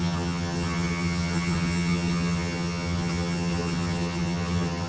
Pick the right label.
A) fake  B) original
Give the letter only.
A